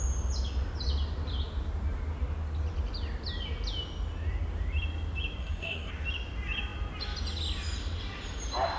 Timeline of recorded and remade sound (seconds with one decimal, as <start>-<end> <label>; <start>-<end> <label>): 0.0-5.4 recorded; 5.4-5.9 remade; 5.9-8.8 recorded